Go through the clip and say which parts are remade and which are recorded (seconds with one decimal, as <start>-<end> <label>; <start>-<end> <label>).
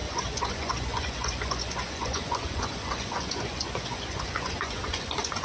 0.0-5.4 remade